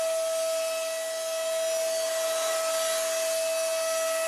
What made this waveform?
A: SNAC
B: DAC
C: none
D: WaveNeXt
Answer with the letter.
C